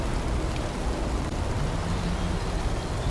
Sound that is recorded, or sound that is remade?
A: recorded